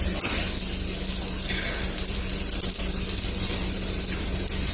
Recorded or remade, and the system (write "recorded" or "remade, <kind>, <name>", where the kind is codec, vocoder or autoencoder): recorded